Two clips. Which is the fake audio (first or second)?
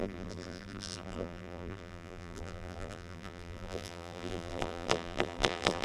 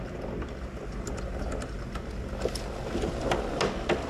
first